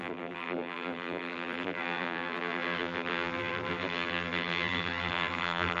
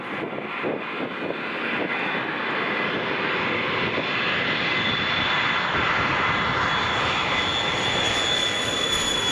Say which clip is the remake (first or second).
first